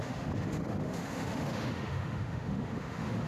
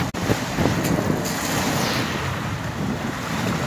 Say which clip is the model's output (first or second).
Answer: first